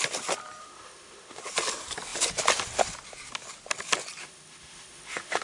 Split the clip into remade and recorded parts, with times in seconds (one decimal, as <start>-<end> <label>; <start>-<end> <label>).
0.0-0.6 recorded; 0.6-1.4 remade; 1.4-4.2 recorded; 4.2-5.4 remade